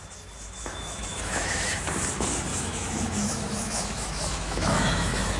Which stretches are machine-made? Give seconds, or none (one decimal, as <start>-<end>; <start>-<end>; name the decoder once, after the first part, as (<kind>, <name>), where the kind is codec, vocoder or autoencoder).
0.6-1.9 (autoencoder, DAC-VAE); 2.5-5.4